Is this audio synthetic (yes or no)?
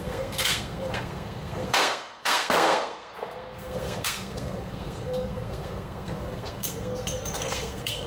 yes